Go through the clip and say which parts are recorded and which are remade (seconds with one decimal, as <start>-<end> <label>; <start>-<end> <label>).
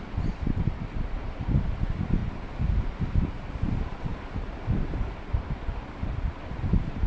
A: 0.0-2.2 remade; 2.2-2.8 recorded; 2.8-7.1 remade